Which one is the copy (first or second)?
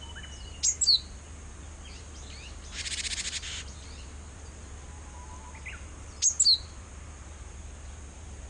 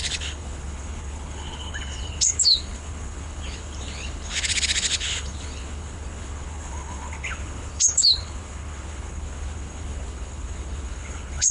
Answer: second